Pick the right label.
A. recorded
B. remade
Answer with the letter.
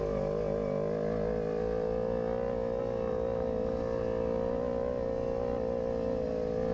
A